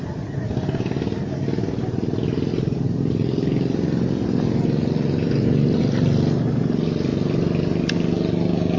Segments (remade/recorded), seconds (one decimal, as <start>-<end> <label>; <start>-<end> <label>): 0.0-8.8 recorded